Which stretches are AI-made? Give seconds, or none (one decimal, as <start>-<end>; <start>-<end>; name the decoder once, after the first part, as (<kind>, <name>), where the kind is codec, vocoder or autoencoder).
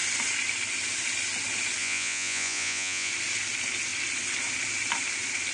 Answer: 1.8-3.1 (vocoder, Vocos)